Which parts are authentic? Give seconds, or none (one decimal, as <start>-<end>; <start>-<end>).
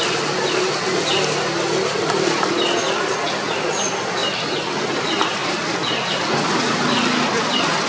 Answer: 5.4-6.3